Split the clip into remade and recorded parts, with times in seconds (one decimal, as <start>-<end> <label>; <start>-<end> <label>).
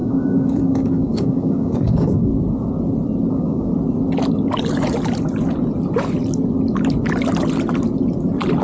0.0-2.3 remade; 2.3-3.3 recorded; 3.3-3.7 remade; 3.7-8.6 recorded